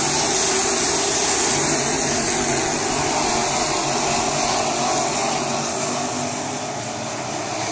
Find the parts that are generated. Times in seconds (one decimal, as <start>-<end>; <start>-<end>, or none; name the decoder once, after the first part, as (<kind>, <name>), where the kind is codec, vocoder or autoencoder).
none